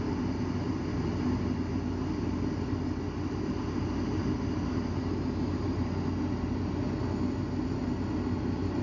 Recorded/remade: recorded